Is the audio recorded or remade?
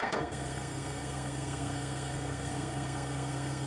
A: remade